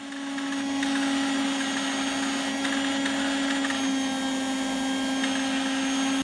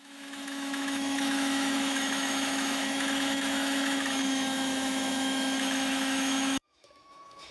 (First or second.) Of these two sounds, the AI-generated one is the second